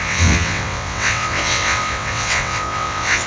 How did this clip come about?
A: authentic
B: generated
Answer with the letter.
B